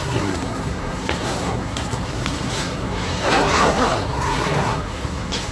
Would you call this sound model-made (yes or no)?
yes